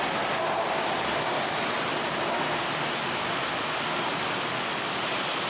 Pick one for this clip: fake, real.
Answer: real